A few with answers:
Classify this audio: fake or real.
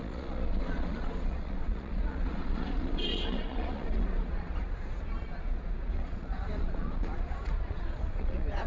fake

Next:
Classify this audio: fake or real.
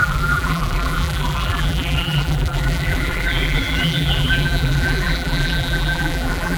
fake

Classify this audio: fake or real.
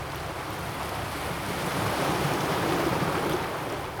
real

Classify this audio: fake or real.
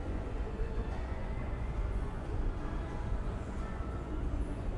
fake